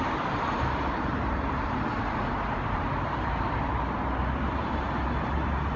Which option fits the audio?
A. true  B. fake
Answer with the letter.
B